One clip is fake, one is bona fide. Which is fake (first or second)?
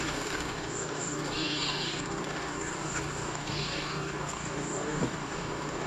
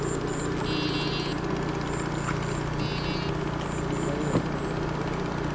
first